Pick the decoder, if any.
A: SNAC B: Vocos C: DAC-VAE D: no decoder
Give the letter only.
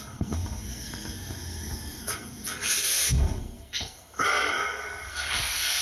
A